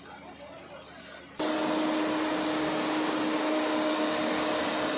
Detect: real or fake real